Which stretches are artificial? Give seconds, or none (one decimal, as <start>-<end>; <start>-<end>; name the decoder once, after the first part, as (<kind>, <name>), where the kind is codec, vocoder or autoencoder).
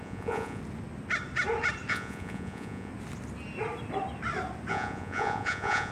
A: 0.0-0.6 (vocoder, Vocos); 1.9-2.9; 4.7-5.9